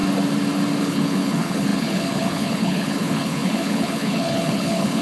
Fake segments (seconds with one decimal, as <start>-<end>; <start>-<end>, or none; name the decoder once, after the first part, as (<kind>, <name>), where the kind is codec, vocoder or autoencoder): 0.8-5.0 (codec, HILCodec)